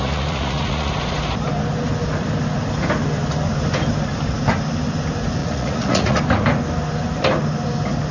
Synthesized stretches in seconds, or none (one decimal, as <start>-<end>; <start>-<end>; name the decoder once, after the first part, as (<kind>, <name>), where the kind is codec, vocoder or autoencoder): 0.0-0.9 (vocoder, Vocos); 5.4-6.2